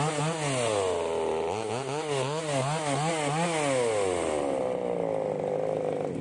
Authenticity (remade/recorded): recorded